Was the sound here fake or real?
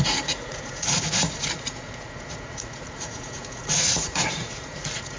fake